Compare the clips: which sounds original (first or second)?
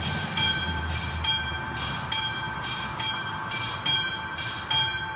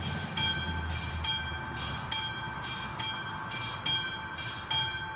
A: second